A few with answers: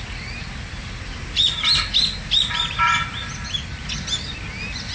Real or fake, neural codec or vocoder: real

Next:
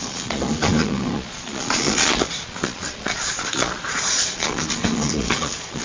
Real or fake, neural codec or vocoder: fake, vocoder, Vocos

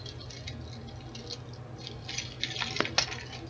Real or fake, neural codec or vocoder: real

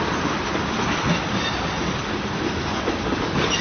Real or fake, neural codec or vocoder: real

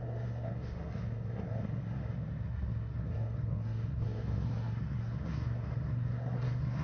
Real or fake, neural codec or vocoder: fake, codec, SNAC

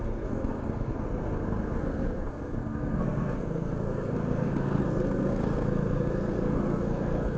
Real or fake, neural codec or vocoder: fake, codec, SNAC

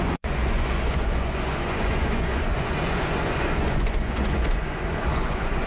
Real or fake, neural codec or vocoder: fake, vocoder, Vocos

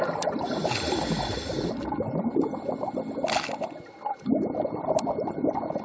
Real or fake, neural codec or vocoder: fake, vocoder, BigVGAN v2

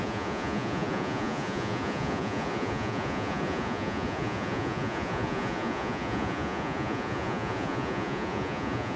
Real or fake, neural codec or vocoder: fake, vocoder, Vocos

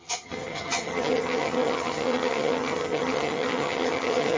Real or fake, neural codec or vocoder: fake, vocoder, HiFi-GAN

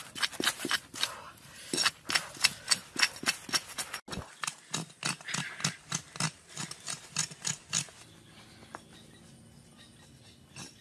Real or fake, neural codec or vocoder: real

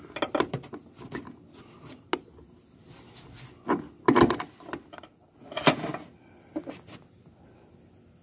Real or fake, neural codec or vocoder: real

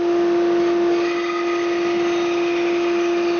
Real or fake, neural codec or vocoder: real